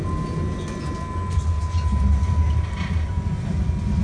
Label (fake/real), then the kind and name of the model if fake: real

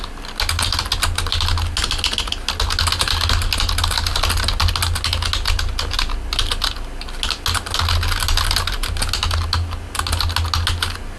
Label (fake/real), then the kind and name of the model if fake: real